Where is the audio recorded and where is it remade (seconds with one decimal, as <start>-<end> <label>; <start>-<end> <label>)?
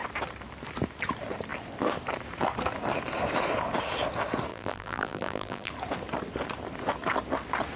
0.0-4.5 recorded; 4.5-5.7 remade; 5.7-7.8 recorded